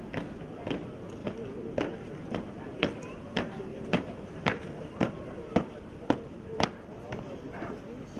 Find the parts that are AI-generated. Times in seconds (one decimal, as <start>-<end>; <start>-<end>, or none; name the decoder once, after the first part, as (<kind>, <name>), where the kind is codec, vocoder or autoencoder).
3.7-6.6 (vocoder, BigVGAN v2)